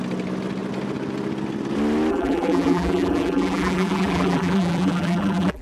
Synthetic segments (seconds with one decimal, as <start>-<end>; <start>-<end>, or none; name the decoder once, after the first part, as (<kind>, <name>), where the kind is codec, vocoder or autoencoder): 2.1-5.6 (vocoder, BigVGAN v2)